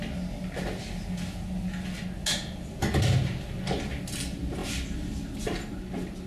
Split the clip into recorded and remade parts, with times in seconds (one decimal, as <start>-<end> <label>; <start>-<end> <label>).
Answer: 0.0-6.3 recorded